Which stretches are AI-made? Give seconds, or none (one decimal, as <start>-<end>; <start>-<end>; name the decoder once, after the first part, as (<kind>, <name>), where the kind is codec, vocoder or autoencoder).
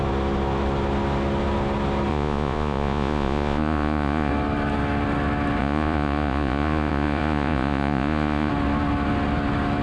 2.1-4.3 (vocoder, Vocos); 5.6-8.5